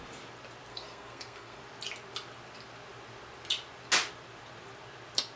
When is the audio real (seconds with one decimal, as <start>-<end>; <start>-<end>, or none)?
0.0-0.7; 1.6-5.4